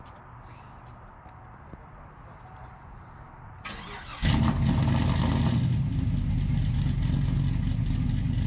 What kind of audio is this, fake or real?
real